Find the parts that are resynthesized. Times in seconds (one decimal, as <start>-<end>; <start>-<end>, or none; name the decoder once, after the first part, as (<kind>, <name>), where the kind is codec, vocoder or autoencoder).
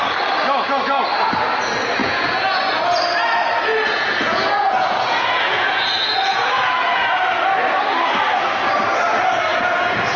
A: 2.0-2.9 (vocoder, Vocos); 3.7-7.2; 9.5-10.2